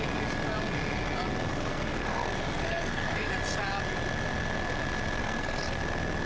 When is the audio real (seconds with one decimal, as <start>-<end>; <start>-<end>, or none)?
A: 0.0-1.5; 3.3-5.2; 5.8-6.3